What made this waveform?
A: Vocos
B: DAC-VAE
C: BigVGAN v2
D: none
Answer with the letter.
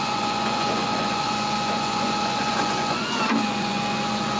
A